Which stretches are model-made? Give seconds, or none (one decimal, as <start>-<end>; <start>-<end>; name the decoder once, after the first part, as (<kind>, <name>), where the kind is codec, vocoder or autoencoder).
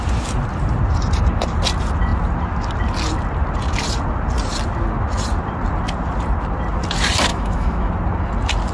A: 7.3-7.9 (autoencoder, DAC-VAE)